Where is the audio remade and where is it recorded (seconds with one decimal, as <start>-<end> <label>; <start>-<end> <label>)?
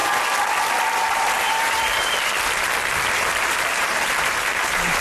0.0-1.0 recorded; 1.0-1.9 remade; 1.9-3.3 recorded; 3.3-5.0 remade